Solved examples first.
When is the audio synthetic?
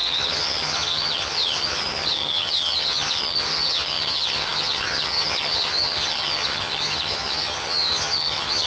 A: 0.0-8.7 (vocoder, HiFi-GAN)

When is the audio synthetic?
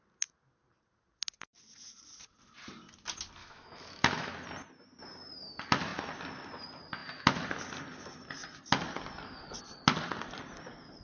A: 3.4-4.3 (autoencoder, DAC-VAE)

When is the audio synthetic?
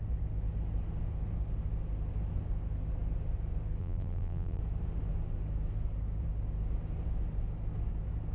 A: 3.8-4.6 (vocoder, BigVGAN v2)